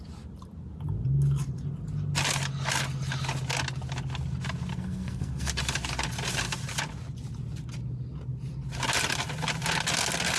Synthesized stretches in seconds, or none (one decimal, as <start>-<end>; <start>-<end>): 4.7-5.5